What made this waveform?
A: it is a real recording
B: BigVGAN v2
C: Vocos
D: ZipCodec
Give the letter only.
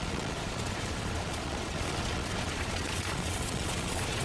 C